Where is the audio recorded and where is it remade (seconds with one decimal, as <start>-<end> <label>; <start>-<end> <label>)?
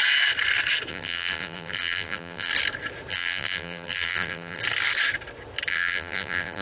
0.0-0.9 recorded; 0.9-2.5 remade; 2.5-3.1 recorded; 3.1-4.6 remade; 4.6-5.7 recorded; 5.7-6.6 remade